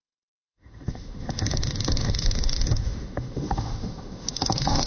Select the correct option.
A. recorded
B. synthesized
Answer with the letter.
B